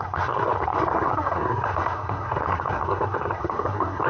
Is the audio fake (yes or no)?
yes